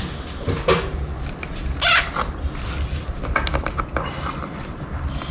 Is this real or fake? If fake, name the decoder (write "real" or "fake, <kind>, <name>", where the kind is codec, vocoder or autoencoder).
real